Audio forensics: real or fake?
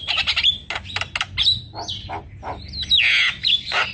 real